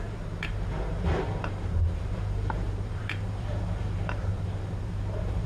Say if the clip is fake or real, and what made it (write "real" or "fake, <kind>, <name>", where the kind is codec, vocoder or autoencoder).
fake, vocoder, BigVGAN v2